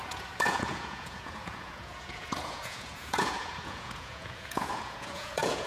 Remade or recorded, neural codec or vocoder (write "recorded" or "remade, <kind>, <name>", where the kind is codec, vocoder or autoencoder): remade, vocoder, Vocos